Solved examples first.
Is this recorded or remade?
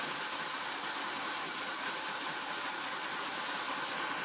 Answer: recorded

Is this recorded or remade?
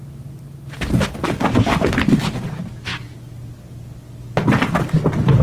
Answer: recorded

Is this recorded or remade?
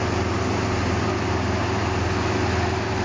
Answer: recorded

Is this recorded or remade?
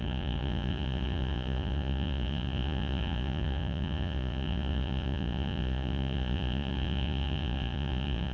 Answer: remade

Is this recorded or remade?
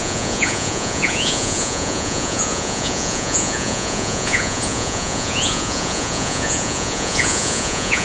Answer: remade